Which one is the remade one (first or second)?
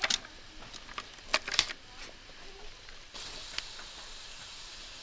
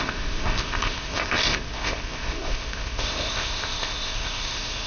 second